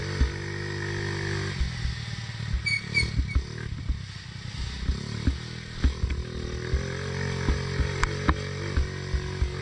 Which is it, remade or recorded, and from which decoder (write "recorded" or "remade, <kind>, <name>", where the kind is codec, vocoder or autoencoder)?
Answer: recorded